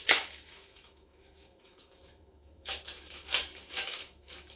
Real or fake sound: fake